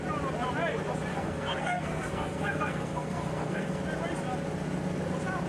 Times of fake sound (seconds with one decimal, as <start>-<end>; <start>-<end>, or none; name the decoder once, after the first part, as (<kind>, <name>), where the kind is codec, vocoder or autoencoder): 1.1-3.8 (codec, SNAC)